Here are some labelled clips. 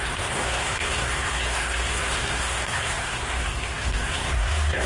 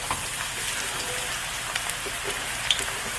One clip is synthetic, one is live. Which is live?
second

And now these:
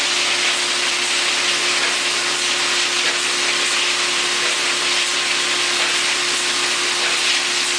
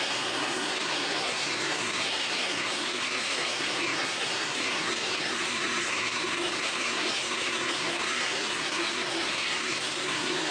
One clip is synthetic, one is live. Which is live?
first